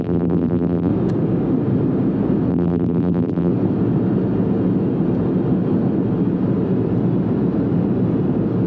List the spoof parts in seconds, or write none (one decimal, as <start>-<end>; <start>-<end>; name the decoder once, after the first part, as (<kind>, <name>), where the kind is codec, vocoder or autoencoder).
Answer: 0.0-0.9 (vocoder, BigVGAN v2); 2.5-3.5